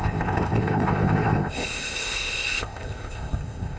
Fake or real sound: fake